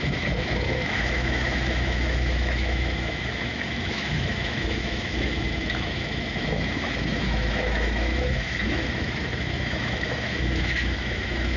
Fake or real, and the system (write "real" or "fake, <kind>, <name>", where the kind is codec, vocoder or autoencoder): fake, autoencoder, DAC-VAE